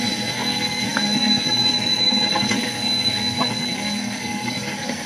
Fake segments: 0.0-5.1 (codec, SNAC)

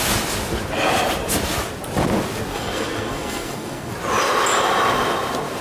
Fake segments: 2.5-3.9 (codec, SNAC)